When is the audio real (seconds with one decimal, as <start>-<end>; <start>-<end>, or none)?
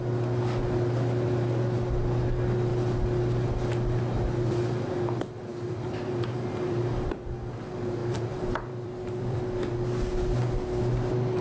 0.0-5.5; 7.2-8.0; 9.4-11.4